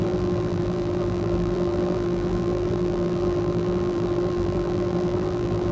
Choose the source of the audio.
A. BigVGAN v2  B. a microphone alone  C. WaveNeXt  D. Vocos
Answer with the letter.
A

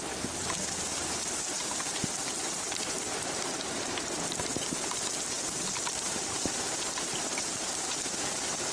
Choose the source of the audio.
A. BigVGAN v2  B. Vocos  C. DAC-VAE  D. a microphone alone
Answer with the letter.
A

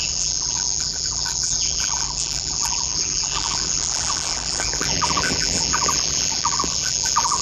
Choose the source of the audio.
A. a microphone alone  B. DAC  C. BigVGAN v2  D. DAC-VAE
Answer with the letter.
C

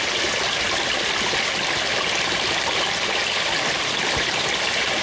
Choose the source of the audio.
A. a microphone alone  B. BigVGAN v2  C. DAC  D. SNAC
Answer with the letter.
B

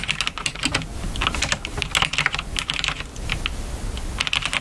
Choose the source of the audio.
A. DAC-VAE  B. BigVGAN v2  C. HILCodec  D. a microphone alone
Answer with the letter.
D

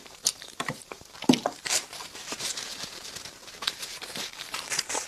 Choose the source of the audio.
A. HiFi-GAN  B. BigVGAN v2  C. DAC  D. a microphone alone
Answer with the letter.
B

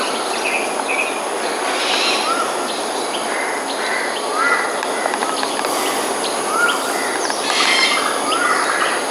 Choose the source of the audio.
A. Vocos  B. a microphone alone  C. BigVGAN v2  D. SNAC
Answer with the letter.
B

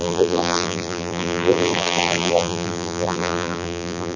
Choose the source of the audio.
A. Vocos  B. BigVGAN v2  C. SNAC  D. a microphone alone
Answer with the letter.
B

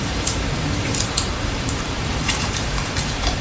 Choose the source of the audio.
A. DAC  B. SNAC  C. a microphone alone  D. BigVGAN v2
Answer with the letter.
D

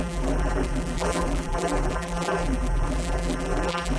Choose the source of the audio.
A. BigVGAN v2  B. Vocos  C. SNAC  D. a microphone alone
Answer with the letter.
A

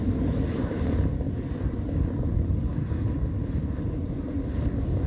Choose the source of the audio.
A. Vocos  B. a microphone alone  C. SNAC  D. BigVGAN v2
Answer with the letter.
B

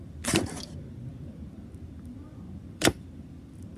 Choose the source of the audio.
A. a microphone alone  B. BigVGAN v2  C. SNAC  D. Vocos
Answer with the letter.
B